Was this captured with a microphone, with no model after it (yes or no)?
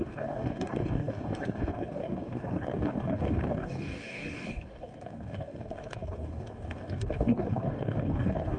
no